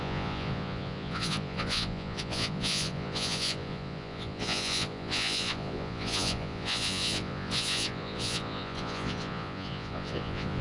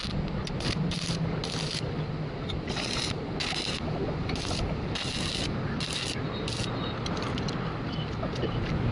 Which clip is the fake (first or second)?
first